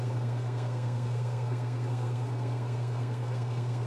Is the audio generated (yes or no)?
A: yes